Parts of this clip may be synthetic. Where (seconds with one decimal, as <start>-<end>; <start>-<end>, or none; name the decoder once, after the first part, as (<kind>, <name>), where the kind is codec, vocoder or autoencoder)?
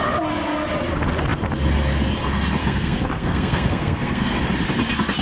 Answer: 2.6-4.4 (codec, SNAC)